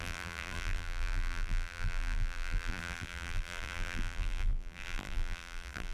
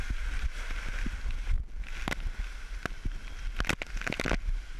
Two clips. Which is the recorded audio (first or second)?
second